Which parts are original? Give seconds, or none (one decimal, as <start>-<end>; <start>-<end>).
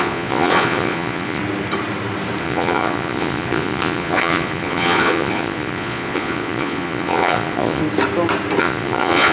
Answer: 1.4-2.4; 7.8-8.6